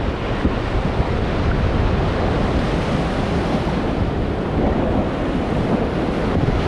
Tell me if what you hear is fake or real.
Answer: real